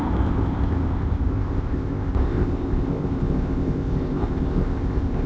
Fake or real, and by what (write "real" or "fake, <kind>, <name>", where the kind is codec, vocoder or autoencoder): fake, codec, ZipCodec